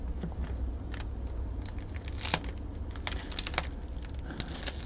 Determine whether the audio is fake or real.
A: real